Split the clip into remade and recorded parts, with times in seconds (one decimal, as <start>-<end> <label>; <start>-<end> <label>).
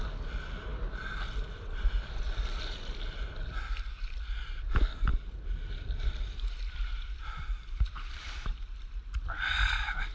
0.0-0.7 recorded; 0.7-3.2 remade; 3.2-5.1 recorded; 5.1-8.6 remade; 8.6-10.1 recorded